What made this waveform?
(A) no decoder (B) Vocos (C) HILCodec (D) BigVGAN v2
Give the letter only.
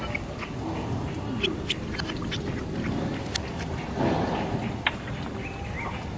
A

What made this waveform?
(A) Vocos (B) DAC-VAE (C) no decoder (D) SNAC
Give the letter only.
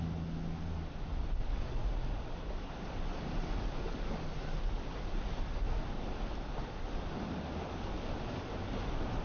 C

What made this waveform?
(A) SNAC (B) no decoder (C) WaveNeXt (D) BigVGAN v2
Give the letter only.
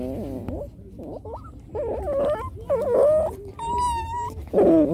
B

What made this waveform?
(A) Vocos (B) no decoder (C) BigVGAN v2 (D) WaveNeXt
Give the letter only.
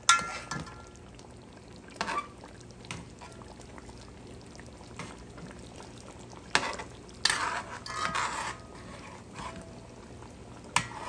B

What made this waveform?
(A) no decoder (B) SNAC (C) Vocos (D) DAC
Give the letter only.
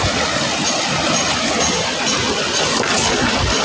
A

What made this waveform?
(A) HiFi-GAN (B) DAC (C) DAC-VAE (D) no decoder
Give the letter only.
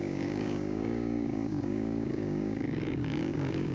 B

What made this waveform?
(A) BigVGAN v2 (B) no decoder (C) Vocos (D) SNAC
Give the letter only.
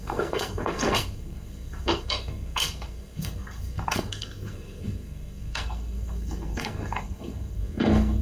D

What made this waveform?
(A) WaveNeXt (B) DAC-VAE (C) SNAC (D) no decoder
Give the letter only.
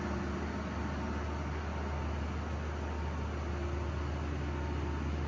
D